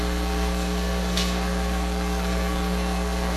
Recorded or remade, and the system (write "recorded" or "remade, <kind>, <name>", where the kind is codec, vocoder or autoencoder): remade, codec, SNAC